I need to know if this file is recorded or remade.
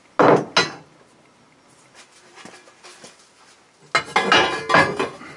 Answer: recorded